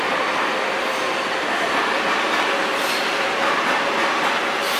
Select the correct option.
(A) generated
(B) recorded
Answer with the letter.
B